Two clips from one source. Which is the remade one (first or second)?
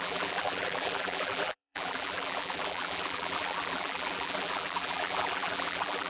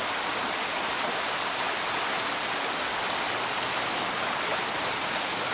first